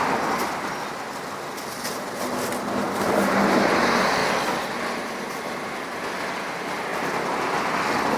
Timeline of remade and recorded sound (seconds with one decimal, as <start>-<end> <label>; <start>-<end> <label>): 0.0-8.2 recorded